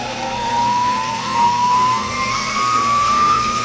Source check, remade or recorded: remade